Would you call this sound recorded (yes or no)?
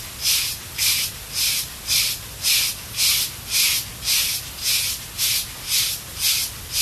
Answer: yes